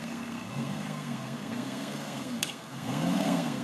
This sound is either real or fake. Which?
fake